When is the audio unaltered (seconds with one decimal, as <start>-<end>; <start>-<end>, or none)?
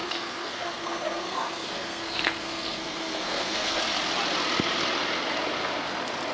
3.8-6.3